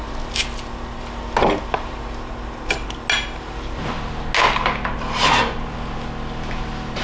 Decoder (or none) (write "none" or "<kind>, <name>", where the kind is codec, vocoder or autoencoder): none